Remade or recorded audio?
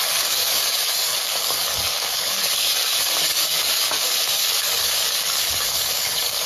remade